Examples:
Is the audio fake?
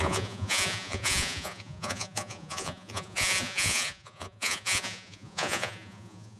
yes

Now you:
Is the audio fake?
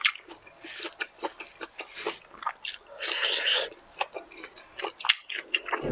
no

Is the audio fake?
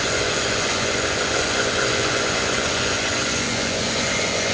yes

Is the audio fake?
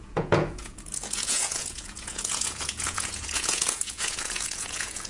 yes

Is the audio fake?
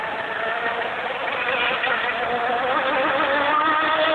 no